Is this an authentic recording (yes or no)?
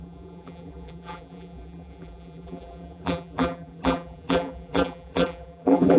no